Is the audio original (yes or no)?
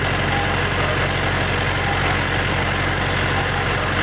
yes